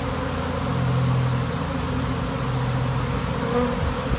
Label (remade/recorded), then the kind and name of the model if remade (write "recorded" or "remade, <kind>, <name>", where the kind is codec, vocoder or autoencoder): recorded